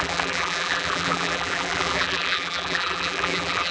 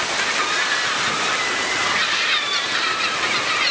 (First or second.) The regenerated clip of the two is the first